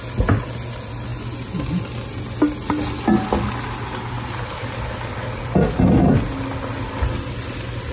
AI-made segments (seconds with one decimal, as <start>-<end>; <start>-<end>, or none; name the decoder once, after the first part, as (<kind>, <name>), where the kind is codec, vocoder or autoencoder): none